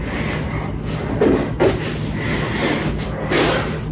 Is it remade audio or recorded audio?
recorded